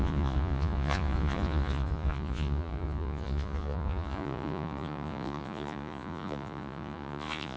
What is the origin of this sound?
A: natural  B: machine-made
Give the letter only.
B